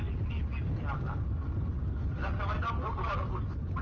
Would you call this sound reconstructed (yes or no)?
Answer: no